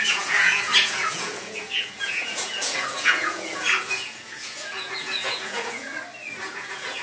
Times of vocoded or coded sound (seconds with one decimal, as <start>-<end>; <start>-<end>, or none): 0.0-5.9; 6.4-7.0